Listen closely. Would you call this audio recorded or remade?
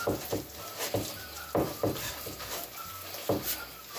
remade